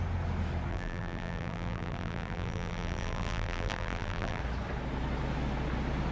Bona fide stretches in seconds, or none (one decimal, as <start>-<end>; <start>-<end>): 0.0-0.7; 4.4-6.1